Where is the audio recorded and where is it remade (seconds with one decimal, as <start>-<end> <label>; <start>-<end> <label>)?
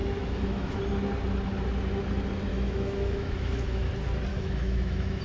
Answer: 0.0-0.8 remade; 0.8-2.5 recorded; 2.5-3.9 remade; 3.9-4.3 recorded; 4.3-5.2 remade